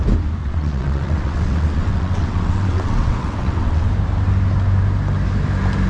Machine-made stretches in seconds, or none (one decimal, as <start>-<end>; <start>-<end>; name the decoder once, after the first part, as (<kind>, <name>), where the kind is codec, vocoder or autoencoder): 0.4-3.9 (vocoder, WaveNeXt)